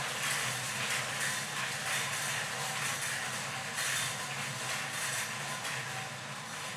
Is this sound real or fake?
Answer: real